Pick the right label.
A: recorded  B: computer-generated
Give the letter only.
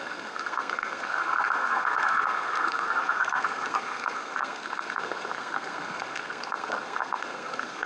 B